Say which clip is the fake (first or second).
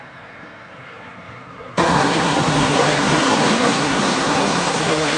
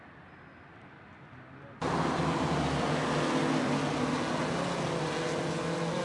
first